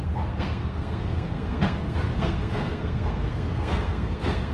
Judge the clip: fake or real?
fake